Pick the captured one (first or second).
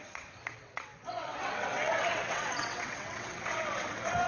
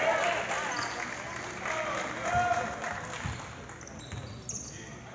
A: second